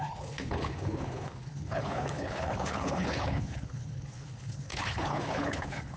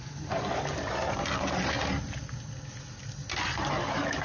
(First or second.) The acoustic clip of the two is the second